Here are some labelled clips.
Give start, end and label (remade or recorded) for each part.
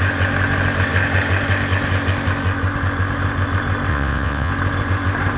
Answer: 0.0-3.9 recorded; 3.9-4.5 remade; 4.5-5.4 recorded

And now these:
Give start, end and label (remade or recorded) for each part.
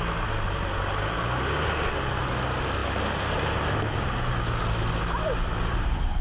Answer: 0.0-6.2 recorded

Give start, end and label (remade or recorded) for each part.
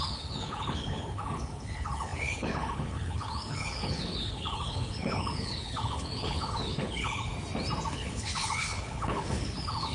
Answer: 0.0-7.3 remade; 7.3-7.9 recorded; 7.9-9.9 remade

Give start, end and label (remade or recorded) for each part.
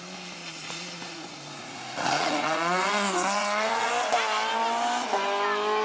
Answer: 0.0-0.4 recorded; 0.4-3.9 remade; 3.9-5.8 recorded